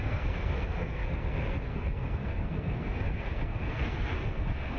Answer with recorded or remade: remade